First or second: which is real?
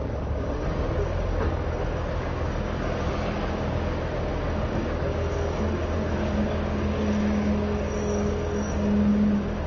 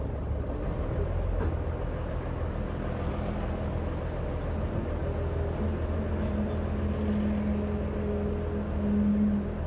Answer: second